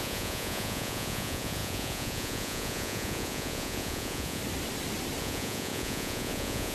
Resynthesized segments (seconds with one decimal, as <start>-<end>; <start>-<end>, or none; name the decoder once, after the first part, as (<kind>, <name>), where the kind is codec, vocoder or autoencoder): 0.0-4.4 (vocoder, Vocos); 5.2-6.7